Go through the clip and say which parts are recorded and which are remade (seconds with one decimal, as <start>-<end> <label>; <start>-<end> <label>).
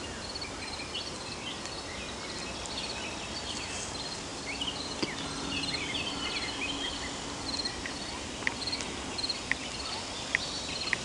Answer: 0.0-11.0 recorded